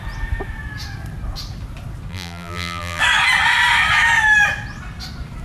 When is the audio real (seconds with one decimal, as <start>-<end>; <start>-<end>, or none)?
0.0-2.1; 3.0-5.4